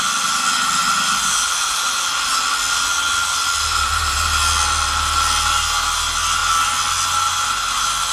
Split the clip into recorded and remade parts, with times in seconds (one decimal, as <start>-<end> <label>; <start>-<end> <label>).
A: 0.0-0.8 recorded; 0.8-1.4 remade; 1.4-8.1 recorded